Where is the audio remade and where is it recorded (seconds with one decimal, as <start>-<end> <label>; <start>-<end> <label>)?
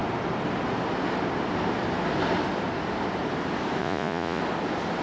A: 0.0-3.8 recorded; 3.8-4.4 remade; 4.4-5.0 recorded